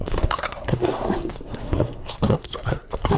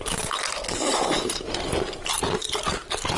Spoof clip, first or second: first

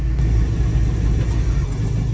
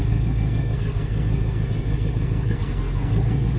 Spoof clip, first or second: second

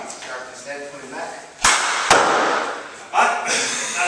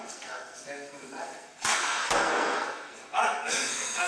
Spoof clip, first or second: second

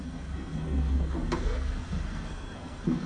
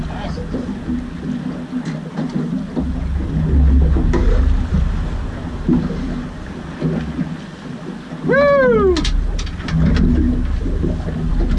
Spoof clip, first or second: first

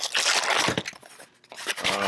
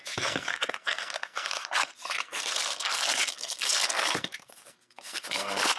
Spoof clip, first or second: second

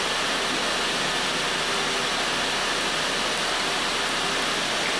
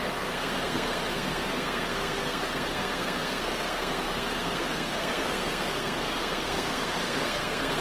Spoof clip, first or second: second